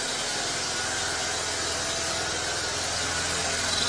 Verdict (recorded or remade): recorded